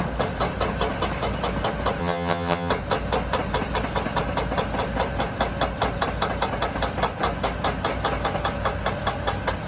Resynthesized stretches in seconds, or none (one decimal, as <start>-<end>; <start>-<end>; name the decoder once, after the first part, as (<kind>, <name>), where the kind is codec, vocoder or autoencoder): 2.0-2.7 (vocoder, HiFi-GAN)